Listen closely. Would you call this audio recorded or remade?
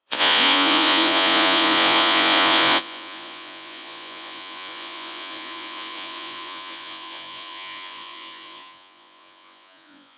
remade